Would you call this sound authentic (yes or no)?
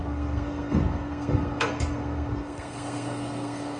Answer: no